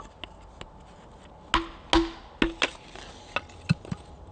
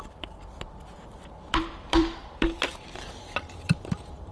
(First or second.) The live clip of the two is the first